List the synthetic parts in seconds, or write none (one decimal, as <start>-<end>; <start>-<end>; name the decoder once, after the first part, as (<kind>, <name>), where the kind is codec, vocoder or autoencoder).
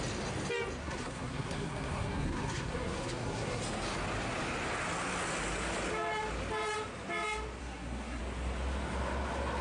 0.8-3.6 (codec, SNAC); 7.6-8.2